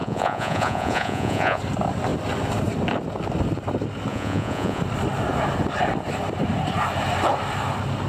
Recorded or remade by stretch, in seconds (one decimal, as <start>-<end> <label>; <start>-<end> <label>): 0.0-1.6 remade; 1.6-4.1 recorded; 4.1-4.8 remade; 4.8-8.1 recorded

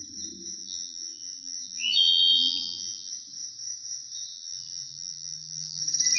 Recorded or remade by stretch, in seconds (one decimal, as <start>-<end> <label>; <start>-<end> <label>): 0.0-0.6 recorded; 0.6-3.1 remade; 3.1-4.3 recorded; 4.3-5.8 remade; 5.8-6.2 recorded

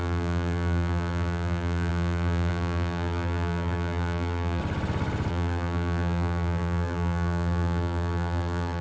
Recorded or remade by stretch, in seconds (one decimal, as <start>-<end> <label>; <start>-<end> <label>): 0.0-4.6 remade; 4.6-5.3 recorded; 5.3-8.8 remade

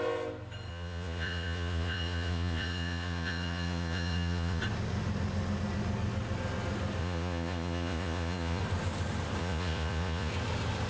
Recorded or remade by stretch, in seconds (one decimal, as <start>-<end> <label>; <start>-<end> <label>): 0.0-0.7 recorded; 0.7-4.6 remade; 4.6-7.0 recorded; 7.0-8.6 remade; 8.6-9.4 recorded; 9.4-10.3 remade; 10.3-10.9 recorded